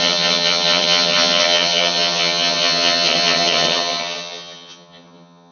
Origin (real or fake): fake